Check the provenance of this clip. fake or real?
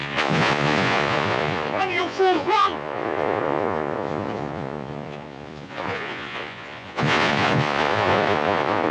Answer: fake